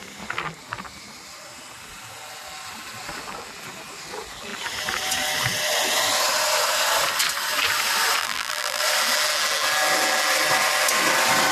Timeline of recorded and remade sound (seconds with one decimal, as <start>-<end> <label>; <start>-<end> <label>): 0.0-8.2 recorded; 8.2-8.8 remade; 8.8-11.5 recorded